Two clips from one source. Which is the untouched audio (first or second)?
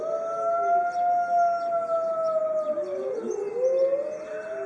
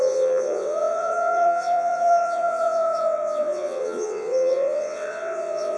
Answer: first